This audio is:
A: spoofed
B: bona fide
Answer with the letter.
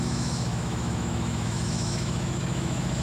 A